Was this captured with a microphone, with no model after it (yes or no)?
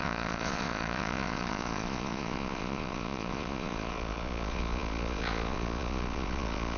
no